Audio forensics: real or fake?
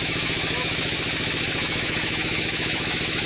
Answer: fake